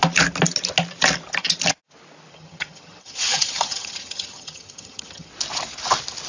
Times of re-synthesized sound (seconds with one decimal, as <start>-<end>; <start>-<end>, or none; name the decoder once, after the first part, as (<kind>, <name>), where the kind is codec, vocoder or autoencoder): 2.3-5.3 (vocoder, HiFi-GAN)